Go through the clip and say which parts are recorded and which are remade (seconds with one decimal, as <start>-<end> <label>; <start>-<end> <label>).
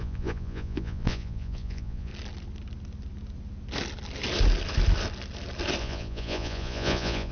0.0-2.1 remade; 2.1-5.8 recorded; 5.8-7.3 remade